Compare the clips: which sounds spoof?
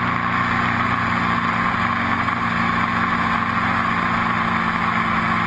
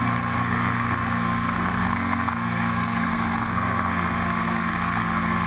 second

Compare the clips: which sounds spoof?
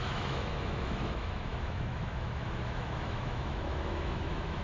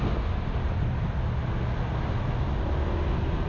first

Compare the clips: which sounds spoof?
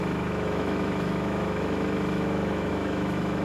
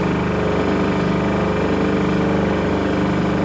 first